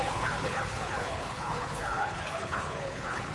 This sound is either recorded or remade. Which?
remade